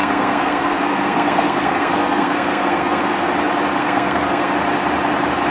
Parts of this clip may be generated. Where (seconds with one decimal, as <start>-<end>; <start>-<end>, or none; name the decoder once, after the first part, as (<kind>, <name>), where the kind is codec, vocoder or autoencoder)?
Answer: 0.0-3.3 (codec, SNAC); 3.8-4.5